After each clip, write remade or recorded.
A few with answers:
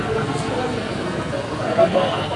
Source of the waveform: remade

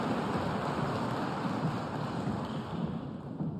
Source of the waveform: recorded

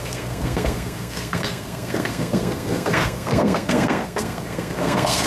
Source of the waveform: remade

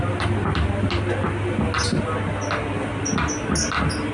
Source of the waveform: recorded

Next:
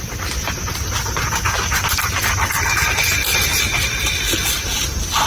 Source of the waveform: recorded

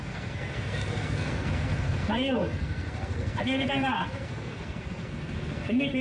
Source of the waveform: remade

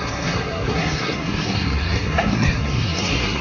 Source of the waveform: remade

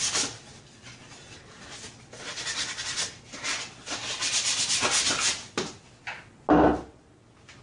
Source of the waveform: recorded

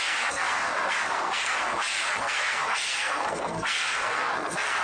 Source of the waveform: remade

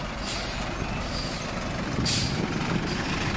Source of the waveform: recorded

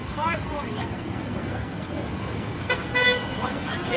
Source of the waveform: remade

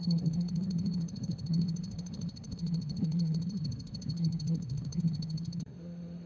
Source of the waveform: remade